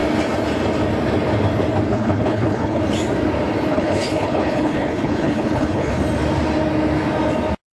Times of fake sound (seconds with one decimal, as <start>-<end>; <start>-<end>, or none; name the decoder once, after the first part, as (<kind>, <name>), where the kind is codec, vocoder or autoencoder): 1.9-2.8 (codec, HILCodec); 3.7-6.0